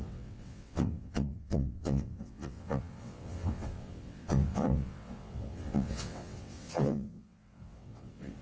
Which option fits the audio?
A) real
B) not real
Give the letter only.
B